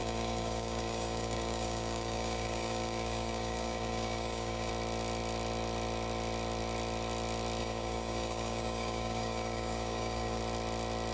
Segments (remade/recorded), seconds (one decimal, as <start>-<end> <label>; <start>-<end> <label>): 0.0-4.7 remade; 4.7-7.6 recorded; 7.6-10.4 remade; 10.4-11.1 recorded